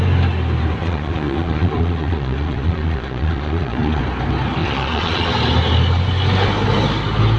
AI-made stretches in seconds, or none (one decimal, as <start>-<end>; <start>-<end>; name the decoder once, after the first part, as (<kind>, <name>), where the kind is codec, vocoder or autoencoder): 0.8-4.0 (vocoder, Vocos); 4.6-5.3